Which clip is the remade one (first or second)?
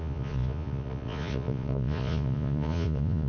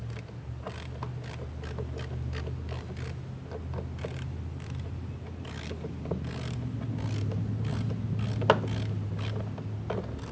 first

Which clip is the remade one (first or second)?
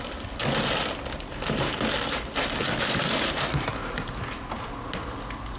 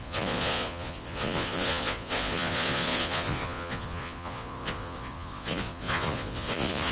second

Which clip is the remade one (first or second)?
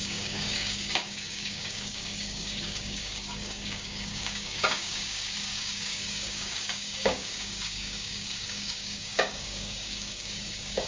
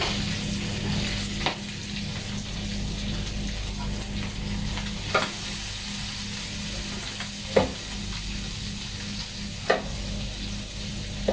first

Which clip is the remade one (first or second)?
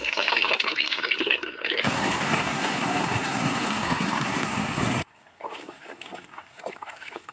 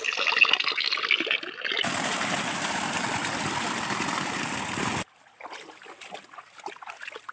first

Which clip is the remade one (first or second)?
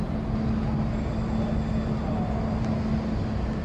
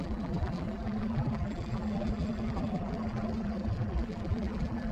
second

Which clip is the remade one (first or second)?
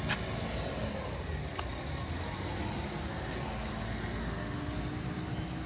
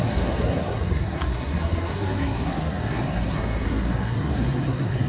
second